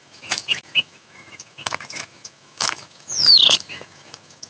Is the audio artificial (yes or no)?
yes